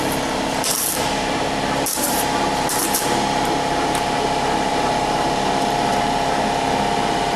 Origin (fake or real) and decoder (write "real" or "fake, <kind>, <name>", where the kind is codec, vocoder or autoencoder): fake, vocoder, BigVGAN v2